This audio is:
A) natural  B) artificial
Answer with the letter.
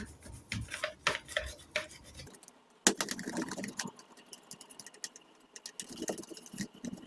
A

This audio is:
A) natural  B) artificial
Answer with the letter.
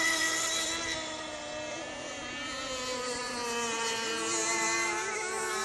A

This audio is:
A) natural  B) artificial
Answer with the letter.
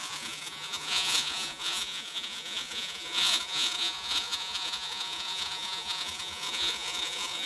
B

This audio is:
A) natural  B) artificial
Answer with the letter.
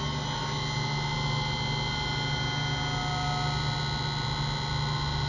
A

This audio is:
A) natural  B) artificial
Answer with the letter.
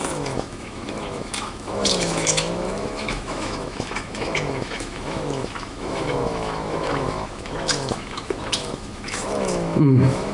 B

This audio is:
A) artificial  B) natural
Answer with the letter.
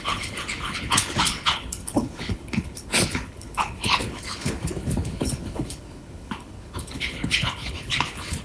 A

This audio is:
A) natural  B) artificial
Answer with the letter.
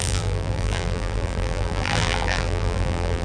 B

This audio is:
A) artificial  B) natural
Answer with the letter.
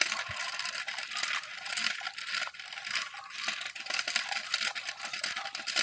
B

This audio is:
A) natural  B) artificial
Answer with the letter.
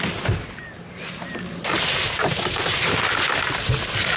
A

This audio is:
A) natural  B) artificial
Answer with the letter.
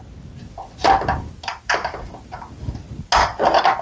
A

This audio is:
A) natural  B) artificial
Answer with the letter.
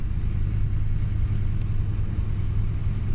A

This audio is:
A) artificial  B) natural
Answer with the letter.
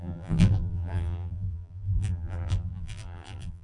A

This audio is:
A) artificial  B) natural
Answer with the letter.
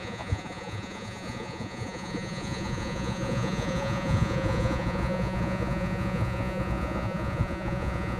A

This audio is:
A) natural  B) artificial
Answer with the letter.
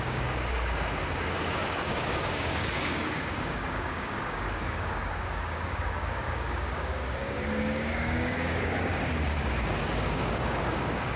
B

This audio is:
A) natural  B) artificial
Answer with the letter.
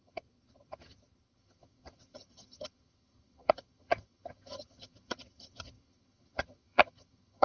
B